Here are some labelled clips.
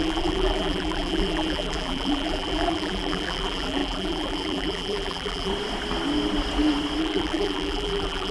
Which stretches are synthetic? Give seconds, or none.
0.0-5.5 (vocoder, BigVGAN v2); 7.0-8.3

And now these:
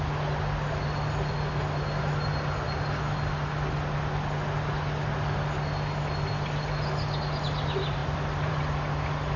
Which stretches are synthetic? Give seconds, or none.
8.0-8.5 (vocoder, BigVGAN v2)

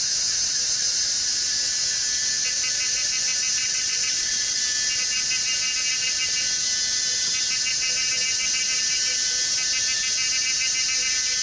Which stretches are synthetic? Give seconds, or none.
3.6-4.6 (vocoder, WaveNeXt)